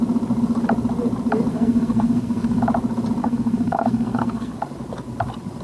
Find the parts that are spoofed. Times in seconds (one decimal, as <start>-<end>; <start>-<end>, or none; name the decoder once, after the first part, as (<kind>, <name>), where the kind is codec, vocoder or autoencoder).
1.5-2.6 (codec, SNAC); 3.2-4.5